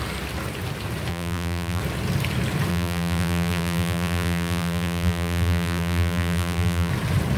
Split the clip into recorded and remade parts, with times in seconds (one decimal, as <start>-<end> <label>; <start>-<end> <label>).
0.0-1.1 recorded; 1.1-1.8 remade; 1.8-2.7 recorded; 2.7-6.9 remade; 6.9-7.4 recorded